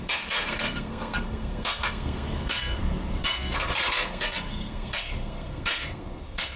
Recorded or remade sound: remade